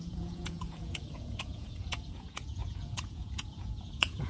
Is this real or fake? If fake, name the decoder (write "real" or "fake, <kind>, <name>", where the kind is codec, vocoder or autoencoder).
fake, vocoder, Vocos